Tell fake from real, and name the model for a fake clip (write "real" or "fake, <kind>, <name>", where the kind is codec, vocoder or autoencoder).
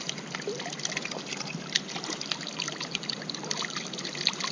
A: real